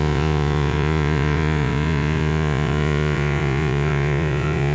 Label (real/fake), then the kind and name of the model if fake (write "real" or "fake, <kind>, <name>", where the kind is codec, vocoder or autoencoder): fake, vocoder, Vocos